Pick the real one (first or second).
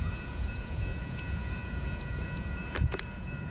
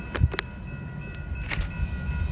second